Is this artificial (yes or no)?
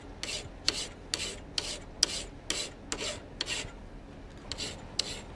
no